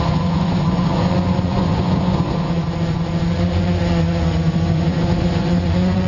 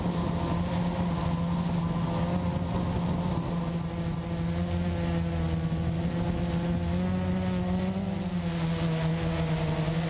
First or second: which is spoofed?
first